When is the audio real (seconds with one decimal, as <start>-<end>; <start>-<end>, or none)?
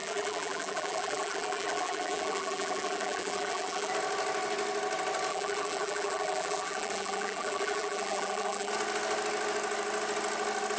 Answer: 3.9-5.3; 8.7-10.8